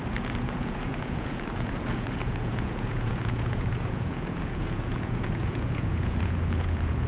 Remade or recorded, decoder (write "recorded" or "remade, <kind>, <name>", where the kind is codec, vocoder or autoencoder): remade, vocoder, Vocos